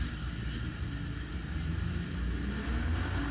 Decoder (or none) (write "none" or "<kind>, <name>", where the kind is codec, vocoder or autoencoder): none